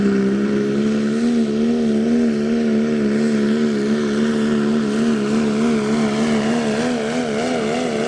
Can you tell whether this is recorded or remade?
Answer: recorded